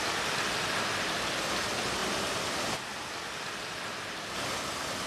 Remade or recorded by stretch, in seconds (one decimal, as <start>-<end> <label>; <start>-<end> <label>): 0.0-5.1 recorded